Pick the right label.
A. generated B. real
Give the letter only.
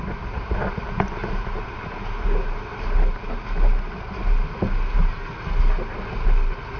B